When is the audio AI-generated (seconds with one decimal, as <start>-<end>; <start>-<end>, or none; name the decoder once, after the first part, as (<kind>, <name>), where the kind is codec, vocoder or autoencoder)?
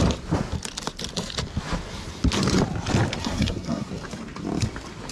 3.2-3.9 (codec, SNAC)